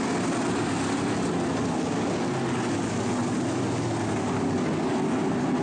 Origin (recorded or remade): recorded